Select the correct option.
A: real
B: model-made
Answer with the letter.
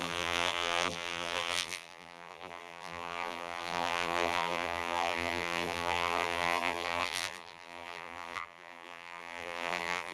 B